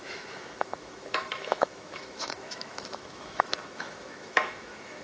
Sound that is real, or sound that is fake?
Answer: fake